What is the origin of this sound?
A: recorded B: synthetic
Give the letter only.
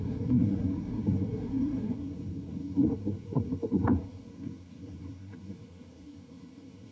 B